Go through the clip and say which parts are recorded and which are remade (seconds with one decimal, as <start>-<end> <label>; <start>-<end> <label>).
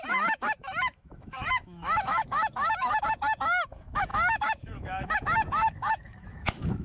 0.0-6.8 remade